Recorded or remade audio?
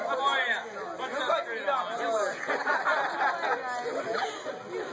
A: recorded